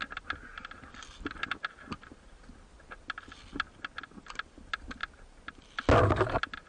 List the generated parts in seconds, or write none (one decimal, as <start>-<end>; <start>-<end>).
none

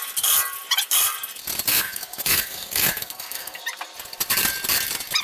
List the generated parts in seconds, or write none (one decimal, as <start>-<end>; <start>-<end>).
1.7-3.6

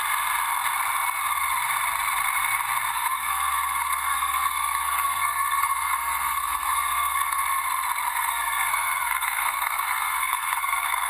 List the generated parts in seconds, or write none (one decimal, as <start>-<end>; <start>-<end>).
2.9-7.4; 8.1-11.1

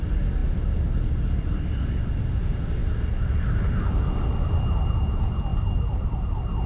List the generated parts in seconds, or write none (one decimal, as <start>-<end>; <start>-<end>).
none

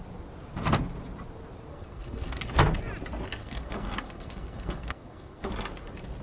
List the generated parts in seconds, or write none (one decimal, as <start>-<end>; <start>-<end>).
1.7-2.4; 3.4-5.5

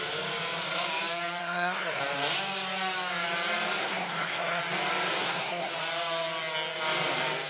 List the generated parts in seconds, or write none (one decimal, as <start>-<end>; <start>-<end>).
1.4-2.0; 3.8-4.6; 5.2-5.7